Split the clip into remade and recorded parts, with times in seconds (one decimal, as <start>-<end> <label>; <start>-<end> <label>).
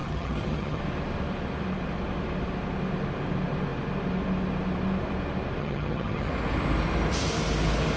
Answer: 0.0-0.8 remade; 0.8-5.6 recorded; 5.6-6.3 remade; 6.3-8.0 recorded